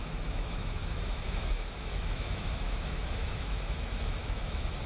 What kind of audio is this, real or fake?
fake